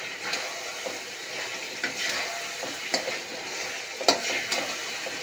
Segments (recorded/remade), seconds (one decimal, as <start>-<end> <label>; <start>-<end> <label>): 0.0-5.2 recorded